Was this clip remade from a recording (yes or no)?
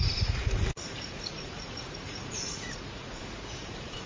yes